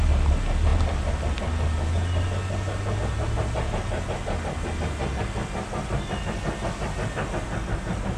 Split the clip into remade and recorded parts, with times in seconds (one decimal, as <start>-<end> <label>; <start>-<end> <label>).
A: 0.0-8.2 recorded